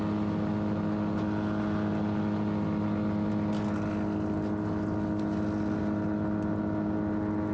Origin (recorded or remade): recorded